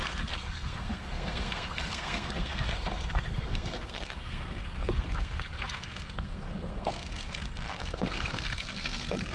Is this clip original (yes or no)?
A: no